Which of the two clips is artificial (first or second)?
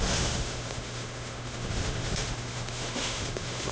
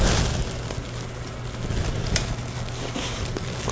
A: first